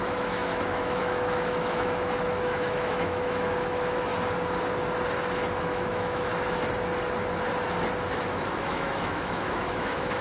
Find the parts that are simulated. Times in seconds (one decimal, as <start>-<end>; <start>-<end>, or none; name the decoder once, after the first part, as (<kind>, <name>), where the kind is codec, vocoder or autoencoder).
0.0-4.1 (autoencoder, DAC-VAE); 5.6-6.3; 8.2-10.2